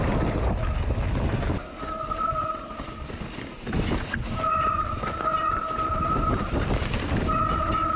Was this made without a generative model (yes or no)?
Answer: yes